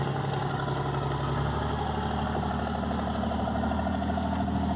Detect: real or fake real